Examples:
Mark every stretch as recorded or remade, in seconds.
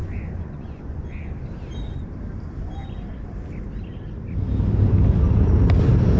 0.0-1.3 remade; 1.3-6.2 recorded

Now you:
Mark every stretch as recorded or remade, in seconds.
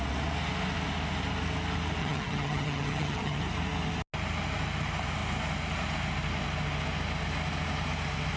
0.0-2.0 recorded; 2.0-3.4 remade; 3.4-8.4 recorded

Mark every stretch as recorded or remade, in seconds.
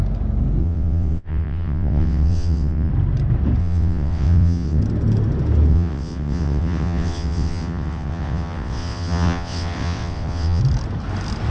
0.0-0.6 recorded; 0.6-2.9 remade; 2.9-3.6 recorded; 3.6-4.8 remade; 4.8-5.7 recorded; 5.7-10.6 remade; 10.6-11.5 recorded